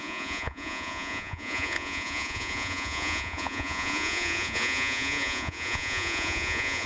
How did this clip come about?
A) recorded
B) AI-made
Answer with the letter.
B